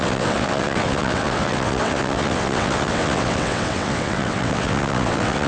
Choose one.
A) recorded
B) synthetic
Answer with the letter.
B